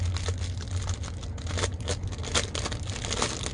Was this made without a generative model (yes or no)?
yes